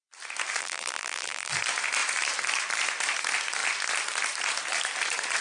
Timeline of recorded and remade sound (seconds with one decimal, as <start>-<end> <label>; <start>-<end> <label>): 0.0-0.6 recorded; 0.6-1.5 remade; 1.5-5.4 recorded